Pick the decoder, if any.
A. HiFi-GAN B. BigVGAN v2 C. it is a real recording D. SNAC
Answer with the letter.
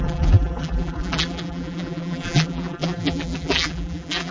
B